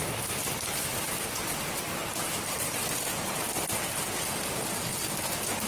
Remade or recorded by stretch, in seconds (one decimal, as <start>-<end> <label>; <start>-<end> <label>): 0.0-2.0 recorded; 2.0-2.8 remade; 2.8-5.7 recorded

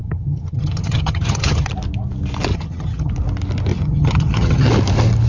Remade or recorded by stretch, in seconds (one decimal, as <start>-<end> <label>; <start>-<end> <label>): 0.0-1.7 remade; 1.7-2.5 recorded; 2.5-3.1 remade; 3.1-3.7 recorded; 3.7-4.7 remade; 4.7-5.3 recorded

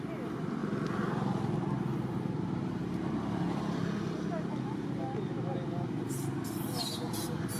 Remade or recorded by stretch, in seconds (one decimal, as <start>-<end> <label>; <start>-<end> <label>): 0.0-7.6 recorded